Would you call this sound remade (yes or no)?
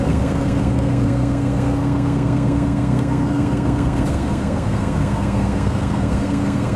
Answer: yes